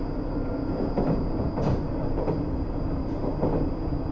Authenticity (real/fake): real